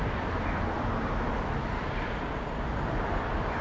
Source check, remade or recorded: recorded